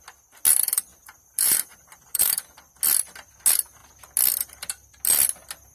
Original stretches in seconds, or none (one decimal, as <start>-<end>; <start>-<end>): 0.0-0.9; 2.7-5.7